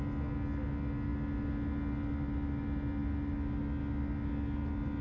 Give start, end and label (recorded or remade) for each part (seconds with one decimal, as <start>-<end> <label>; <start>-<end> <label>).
0.0-5.0 recorded